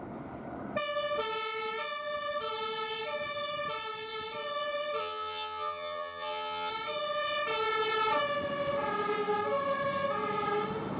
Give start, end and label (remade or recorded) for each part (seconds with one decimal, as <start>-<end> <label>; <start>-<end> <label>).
0.0-5.0 recorded; 5.0-6.7 remade; 6.7-11.0 recorded